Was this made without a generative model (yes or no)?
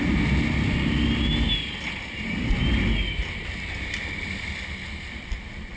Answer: yes